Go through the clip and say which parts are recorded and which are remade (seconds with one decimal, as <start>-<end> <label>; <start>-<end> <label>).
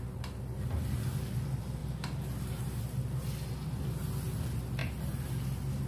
0.0-5.9 recorded